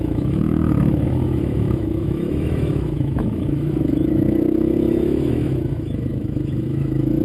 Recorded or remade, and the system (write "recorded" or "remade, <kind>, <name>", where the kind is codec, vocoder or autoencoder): remade, autoencoder, DAC-VAE